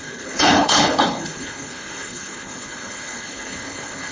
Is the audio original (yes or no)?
no